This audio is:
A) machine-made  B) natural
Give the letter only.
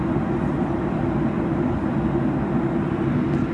B